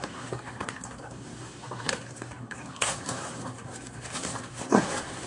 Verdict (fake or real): fake